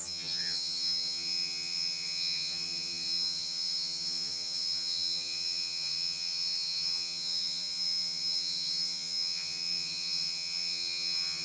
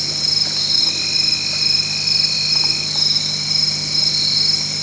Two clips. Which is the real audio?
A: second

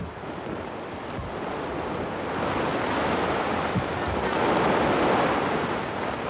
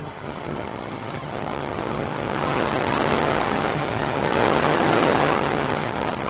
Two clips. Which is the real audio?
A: first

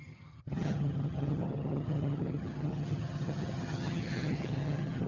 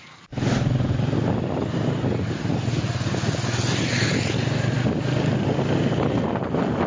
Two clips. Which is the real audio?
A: second